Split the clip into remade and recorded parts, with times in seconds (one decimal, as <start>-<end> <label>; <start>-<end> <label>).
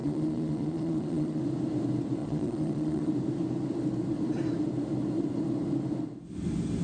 0.0-1.4 remade; 1.4-2.2 recorded; 2.2-3.1 remade; 3.1-6.8 recorded